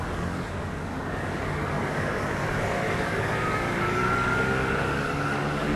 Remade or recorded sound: remade